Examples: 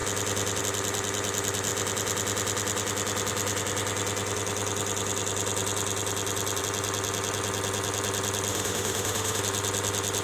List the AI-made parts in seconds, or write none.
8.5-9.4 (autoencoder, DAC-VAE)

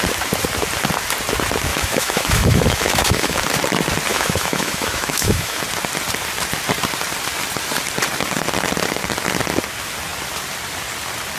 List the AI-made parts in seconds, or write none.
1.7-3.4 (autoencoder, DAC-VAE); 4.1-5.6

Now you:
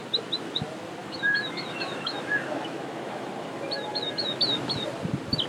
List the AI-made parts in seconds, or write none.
1.0-3.3 (autoencoder, DAC-VAE); 3.9-4.4

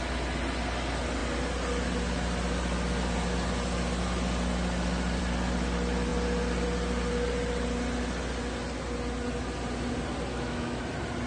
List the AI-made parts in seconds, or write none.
10.3-10.8 (autoencoder, DAC-VAE)

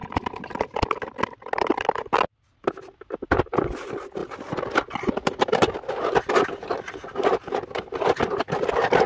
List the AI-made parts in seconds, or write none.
none